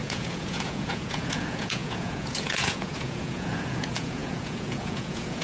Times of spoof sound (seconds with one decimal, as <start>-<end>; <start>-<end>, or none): 0.0-5.4